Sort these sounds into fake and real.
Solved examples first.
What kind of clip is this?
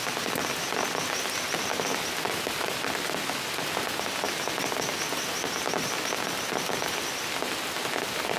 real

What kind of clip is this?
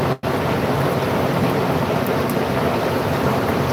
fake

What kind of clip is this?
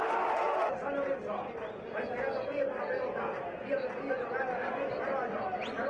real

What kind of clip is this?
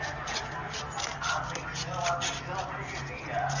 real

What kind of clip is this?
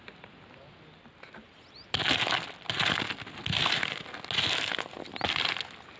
real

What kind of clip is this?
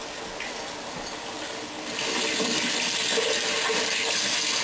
real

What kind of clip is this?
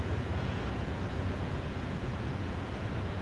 fake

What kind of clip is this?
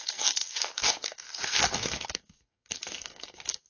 fake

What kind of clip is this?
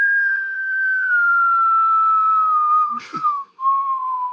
fake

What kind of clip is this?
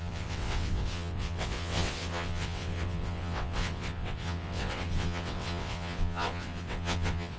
fake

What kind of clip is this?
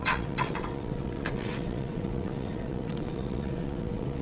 fake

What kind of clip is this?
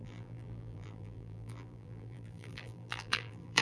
fake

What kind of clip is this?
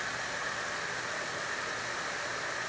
real